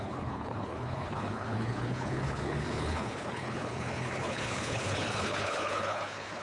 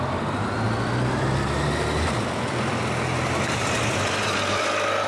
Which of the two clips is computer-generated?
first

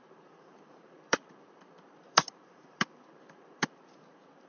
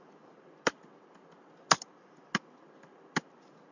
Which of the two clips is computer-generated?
first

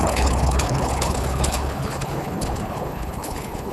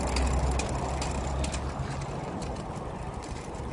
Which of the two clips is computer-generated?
first